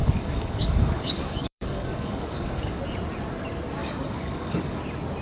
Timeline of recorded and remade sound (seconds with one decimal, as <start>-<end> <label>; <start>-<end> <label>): 0.0-2.8 remade; 2.8-3.8 recorded; 3.8-4.8 remade; 4.8-5.2 recorded